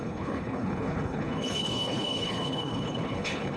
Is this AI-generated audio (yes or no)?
yes